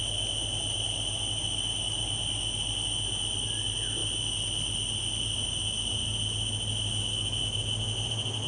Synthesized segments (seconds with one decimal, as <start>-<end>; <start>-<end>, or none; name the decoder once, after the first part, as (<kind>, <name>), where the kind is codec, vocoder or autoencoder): none